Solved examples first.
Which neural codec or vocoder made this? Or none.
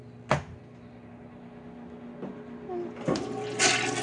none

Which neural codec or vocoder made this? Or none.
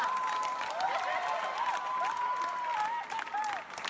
none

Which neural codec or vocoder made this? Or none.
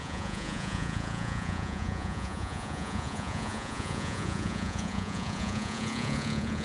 vocoder, Vocos